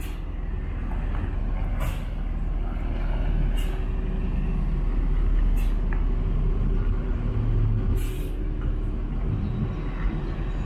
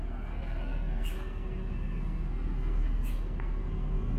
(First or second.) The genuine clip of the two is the first